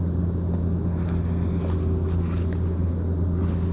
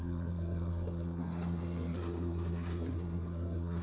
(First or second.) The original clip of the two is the first